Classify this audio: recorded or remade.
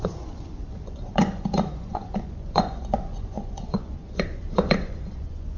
remade